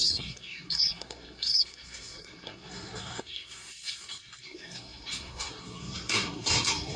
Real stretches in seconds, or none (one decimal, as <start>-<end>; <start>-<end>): none